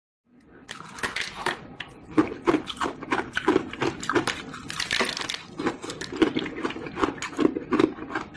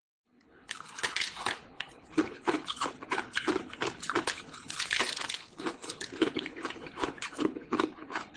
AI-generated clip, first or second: second